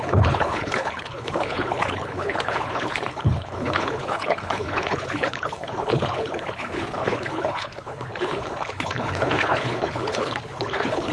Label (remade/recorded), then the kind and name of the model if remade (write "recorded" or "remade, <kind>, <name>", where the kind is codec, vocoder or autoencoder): remade, codec, HILCodec